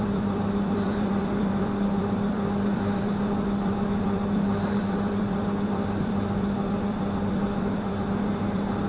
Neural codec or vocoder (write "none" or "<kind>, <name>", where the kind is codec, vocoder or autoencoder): vocoder, BigVGAN v2